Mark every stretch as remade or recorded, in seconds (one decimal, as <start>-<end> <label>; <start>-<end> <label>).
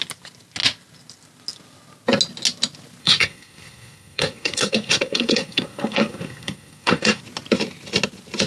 0.0-3.0 recorded; 3.0-7.2 remade; 7.2-8.5 recorded